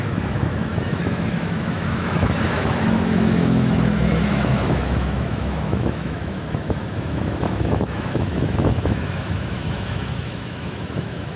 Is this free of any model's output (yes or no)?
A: no